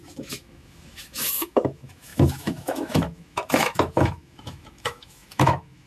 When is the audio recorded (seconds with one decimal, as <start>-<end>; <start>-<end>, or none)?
none